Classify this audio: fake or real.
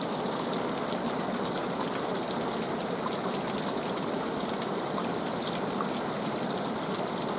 real